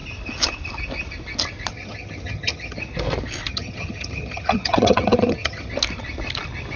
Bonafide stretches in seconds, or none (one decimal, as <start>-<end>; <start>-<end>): 0.0-1.7; 2.8-3.5; 5.7-6.8